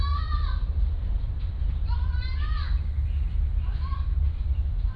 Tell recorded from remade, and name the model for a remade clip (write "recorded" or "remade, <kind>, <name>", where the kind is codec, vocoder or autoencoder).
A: recorded